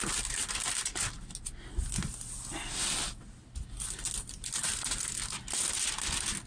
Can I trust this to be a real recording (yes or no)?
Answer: yes